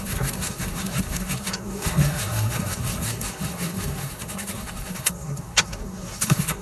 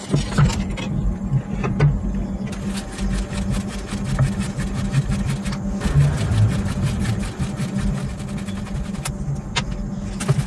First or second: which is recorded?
second